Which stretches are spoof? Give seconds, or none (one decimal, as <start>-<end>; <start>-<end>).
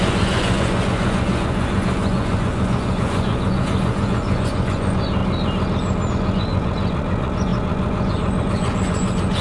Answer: 0.0-5.2; 6.1-9.4